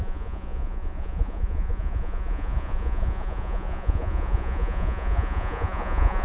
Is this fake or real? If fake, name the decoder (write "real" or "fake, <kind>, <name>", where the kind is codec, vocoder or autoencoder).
fake, vocoder, Vocos